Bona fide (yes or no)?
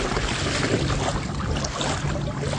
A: yes